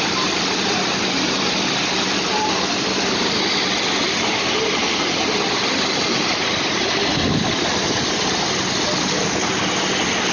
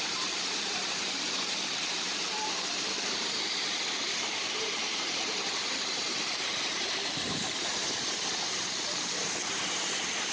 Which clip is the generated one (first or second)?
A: second